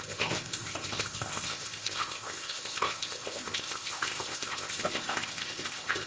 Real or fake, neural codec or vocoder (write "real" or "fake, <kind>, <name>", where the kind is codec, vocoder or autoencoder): fake, codec, ZipCodec